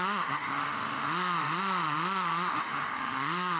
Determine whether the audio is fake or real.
fake